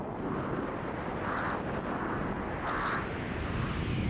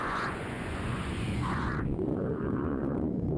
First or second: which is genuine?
first